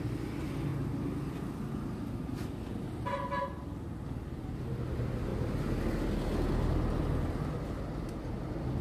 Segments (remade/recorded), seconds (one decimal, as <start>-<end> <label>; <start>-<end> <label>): 0.0-8.8 recorded